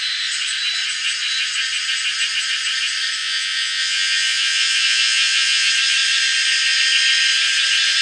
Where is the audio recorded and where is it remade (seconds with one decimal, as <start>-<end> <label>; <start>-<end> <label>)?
0.0-3.2 recorded; 3.2-5.7 remade; 5.7-8.0 recorded